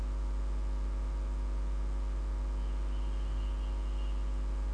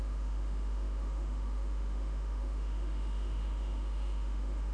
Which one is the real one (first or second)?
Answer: first